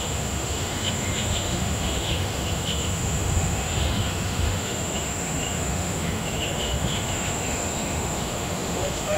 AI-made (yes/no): yes